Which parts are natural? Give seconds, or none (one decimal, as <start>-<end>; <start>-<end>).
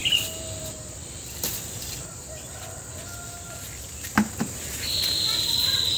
0.6-1.0; 3.8-6.0